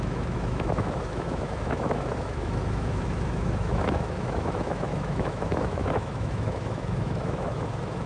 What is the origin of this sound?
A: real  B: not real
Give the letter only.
B